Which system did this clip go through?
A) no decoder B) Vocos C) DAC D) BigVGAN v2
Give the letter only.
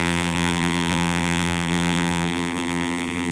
D